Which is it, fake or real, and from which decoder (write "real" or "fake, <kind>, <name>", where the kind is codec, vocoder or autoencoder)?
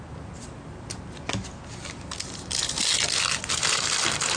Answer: real